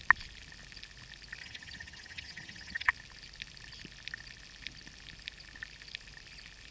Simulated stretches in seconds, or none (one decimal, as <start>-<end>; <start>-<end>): 1.4-2.9

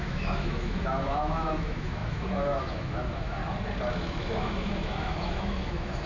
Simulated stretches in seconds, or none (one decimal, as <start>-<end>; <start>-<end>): 0.0-3.4; 3.9-6.1

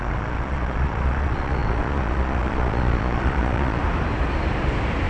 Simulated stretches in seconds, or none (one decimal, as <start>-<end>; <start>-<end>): 0.0-3.8

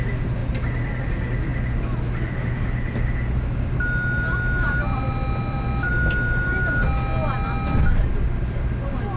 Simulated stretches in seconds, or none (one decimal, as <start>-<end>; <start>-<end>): none

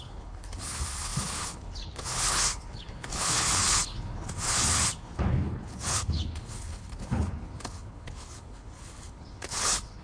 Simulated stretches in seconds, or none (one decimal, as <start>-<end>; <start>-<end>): 0.0-10.0

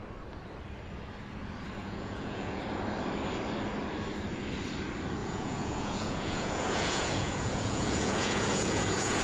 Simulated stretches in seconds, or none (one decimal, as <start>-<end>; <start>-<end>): 1.8-2.6; 5.2-9.2

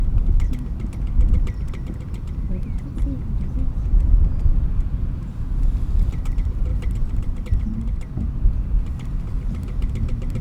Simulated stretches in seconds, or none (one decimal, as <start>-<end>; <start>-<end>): 6.7-7.4

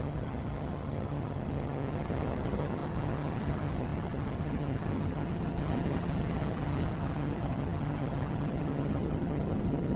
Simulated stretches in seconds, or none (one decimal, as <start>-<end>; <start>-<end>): 0.0-10.0